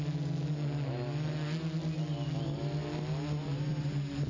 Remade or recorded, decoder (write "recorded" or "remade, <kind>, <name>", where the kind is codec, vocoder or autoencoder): recorded